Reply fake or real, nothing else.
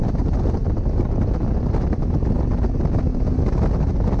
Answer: real